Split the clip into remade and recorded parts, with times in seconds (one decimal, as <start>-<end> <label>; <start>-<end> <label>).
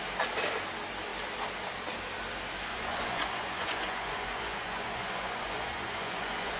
0.0-2.7 recorded; 2.7-6.6 remade